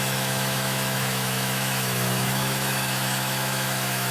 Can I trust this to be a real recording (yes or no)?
no